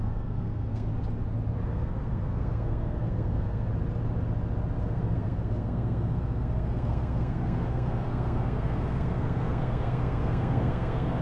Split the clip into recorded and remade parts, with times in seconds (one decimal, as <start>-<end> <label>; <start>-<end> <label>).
0.0-0.9 remade; 0.9-1.7 recorded; 1.7-3.7 remade; 3.7-4.8 recorded; 4.8-11.2 remade

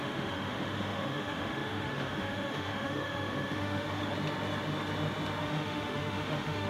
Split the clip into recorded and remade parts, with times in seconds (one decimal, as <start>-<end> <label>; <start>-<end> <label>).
0.0-4.0 remade; 4.0-5.4 recorded; 5.4-6.7 remade